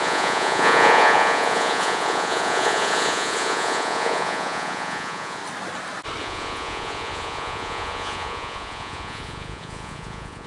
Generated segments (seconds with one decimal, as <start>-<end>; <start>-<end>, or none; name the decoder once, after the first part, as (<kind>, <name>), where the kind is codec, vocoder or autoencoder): 0.0-5.4 (vocoder, Vocos); 6.2-10.5